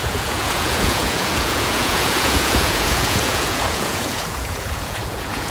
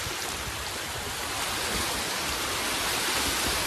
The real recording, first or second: second